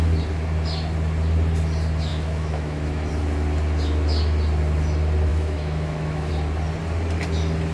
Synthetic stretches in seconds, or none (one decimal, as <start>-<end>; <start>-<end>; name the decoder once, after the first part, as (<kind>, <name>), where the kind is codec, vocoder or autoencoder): 2.1-3.1 (autoencoder, DAC-VAE); 5.3-6.3